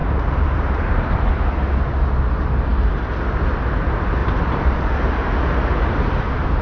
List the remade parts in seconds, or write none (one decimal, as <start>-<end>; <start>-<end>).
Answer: 0.0-1.3; 4.2-4.9